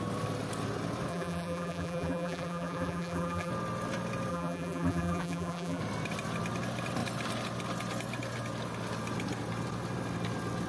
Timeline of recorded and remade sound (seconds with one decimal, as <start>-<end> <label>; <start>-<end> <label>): 0.0-1.1 recorded; 1.1-3.5 remade; 3.5-4.3 recorded; 4.3-5.8 remade; 5.8-10.7 recorded